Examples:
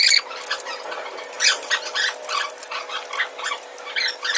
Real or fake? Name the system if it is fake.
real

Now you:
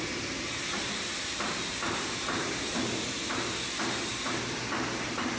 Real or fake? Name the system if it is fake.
fake, vocoder, BigVGAN v2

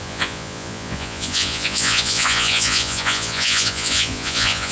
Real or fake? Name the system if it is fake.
fake, vocoder, Vocos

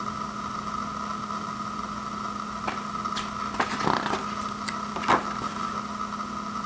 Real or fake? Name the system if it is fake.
real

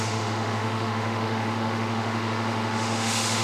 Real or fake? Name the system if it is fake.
fake, autoencoder, DAC-VAE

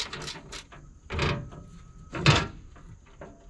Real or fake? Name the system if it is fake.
real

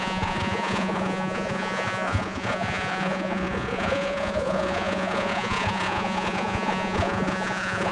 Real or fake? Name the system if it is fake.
fake, vocoder, Vocos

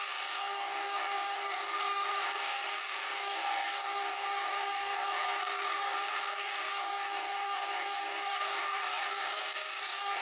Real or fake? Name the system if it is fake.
fake, codec, DAC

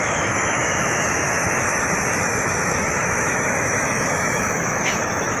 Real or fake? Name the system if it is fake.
fake, autoencoder, DAC-VAE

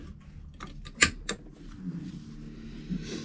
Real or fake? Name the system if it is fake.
real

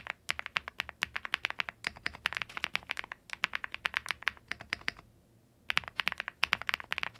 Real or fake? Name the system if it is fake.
real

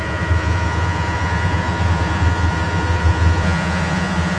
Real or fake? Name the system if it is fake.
fake, vocoder, Vocos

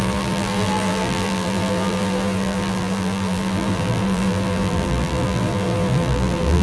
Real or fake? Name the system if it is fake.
fake, vocoder, BigVGAN v2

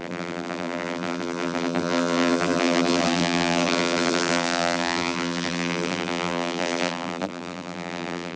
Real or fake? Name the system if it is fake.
fake, vocoder, BigVGAN v2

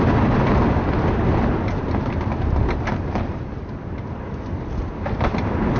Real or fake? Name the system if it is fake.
real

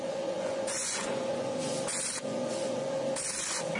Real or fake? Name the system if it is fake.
fake, vocoder, Vocos